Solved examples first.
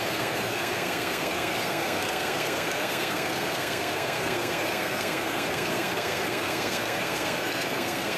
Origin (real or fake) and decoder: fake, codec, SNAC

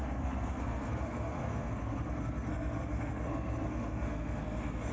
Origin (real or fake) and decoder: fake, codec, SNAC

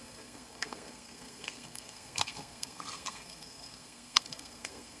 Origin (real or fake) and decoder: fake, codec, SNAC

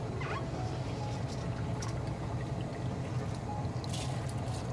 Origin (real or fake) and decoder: real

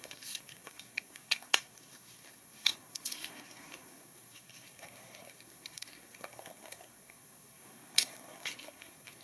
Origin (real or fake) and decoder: fake, codec, SNAC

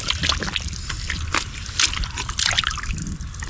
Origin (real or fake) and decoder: real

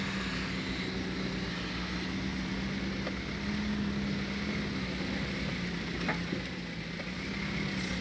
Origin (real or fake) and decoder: real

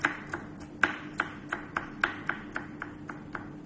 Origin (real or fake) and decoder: real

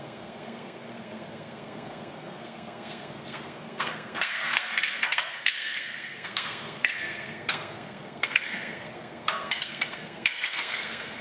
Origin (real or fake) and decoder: fake, codec, SNAC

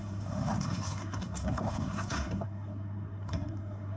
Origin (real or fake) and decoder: fake, codec, SNAC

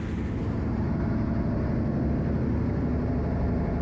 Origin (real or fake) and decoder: real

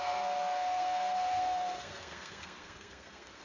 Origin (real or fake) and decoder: fake, codec, SNAC